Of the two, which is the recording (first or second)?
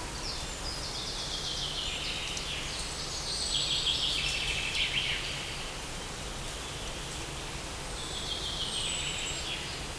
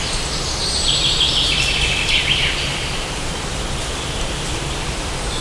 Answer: first